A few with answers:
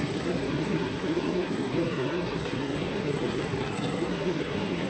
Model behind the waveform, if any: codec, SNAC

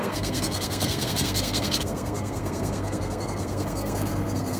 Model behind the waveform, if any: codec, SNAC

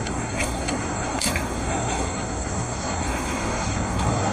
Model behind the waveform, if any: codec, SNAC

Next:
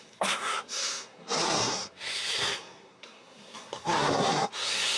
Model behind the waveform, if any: codec, SNAC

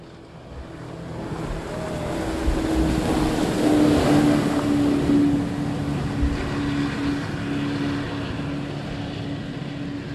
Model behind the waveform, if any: none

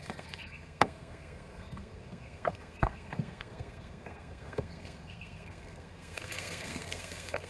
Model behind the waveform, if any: codec, SNAC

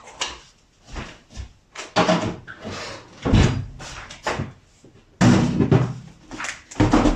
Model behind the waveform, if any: none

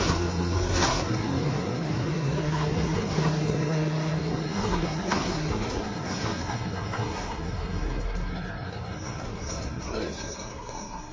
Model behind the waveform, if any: codec, SNAC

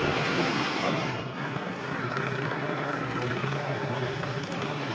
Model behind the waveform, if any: codec, SNAC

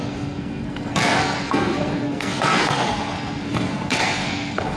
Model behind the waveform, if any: codec, SNAC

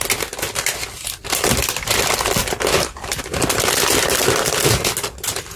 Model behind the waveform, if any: none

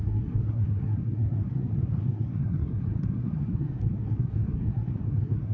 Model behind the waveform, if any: codec, SNAC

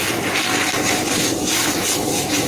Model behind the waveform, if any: none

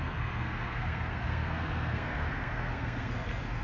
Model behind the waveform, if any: codec, SNAC